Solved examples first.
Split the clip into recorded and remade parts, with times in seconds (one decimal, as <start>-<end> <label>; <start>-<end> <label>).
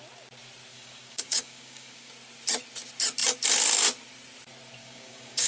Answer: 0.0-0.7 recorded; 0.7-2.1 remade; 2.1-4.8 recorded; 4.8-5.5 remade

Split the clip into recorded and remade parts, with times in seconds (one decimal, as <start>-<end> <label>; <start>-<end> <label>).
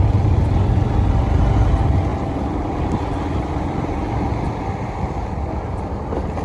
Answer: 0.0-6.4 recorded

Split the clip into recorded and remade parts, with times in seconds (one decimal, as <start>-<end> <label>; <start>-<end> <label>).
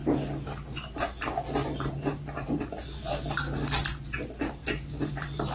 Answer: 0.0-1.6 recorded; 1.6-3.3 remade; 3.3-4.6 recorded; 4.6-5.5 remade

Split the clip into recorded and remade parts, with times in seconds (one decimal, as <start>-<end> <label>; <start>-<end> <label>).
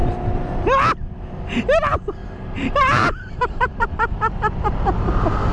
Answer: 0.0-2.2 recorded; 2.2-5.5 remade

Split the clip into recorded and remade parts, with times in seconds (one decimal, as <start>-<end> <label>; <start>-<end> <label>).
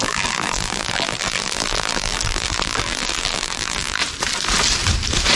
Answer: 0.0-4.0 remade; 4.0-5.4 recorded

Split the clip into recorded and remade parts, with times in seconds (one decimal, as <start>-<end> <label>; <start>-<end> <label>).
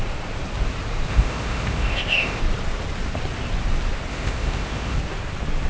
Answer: 0.0-1.1 recorded; 1.1-2.4 remade; 2.4-4.1 recorded; 4.1-5.0 remade; 5.0-5.7 recorded